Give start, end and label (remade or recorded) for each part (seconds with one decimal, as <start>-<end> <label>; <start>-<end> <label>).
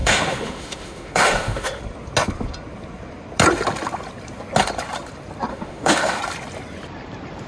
0.0-1.8 remade; 1.8-5.5 recorded; 5.5-6.2 remade; 6.2-7.5 recorded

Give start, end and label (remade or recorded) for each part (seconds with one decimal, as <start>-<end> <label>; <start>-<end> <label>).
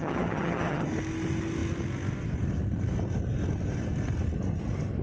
0.0-0.9 remade; 0.9-5.0 recorded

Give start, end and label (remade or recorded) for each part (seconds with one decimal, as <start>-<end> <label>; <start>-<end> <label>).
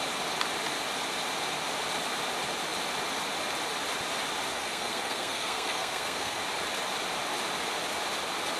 0.0-4.5 recorded; 4.5-6.4 remade; 6.4-8.6 recorded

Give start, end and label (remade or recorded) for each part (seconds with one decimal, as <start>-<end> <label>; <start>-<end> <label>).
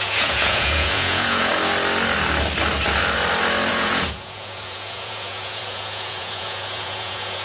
0.0-1.5 remade; 1.5-3.7 recorded; 3.7-7.4 remade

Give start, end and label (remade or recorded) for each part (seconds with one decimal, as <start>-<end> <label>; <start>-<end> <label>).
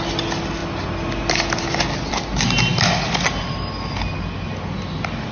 0.0-5.3 recorded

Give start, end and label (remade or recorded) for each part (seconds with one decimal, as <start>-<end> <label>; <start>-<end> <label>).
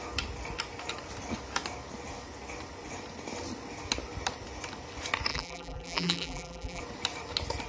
0.0-5.3 recorded; 5.3-6.8 remade; 6.8-7.7 recorded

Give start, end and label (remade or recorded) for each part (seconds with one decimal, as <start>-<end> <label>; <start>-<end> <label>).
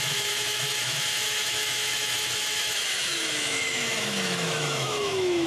0.0-5.5 remade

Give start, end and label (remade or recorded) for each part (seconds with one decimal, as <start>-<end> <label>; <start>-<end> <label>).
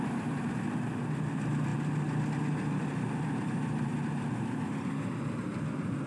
0.0-1.7 remade; 1.7-2.8 recorded; 2.8-3.9 remade; 3.9-4.8 recorded; 4.8-6.1 remade